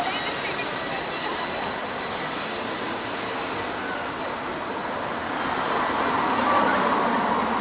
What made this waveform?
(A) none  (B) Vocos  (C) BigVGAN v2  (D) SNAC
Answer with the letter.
A